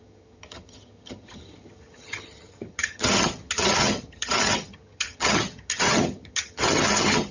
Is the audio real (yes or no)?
no